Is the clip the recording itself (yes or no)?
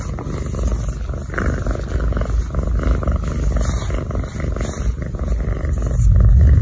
yes